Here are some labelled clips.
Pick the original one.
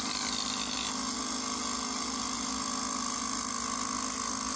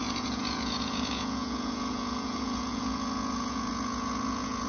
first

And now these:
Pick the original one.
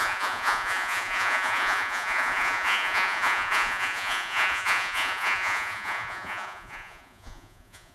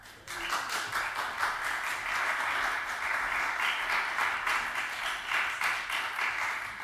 second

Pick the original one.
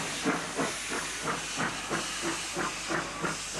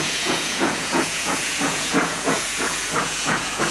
first